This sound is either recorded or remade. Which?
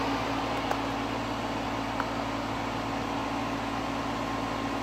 recorded